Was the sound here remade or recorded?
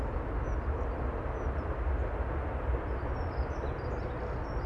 recorded